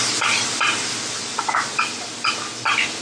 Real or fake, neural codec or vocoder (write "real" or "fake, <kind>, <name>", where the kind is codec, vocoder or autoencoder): real